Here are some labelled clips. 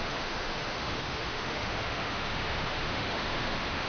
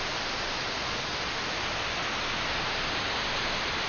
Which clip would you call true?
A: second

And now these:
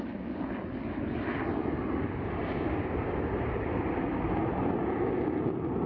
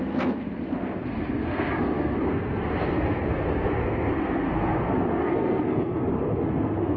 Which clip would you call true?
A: first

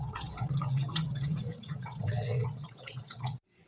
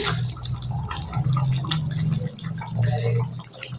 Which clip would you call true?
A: second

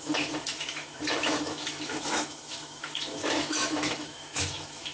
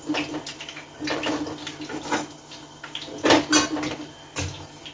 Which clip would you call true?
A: second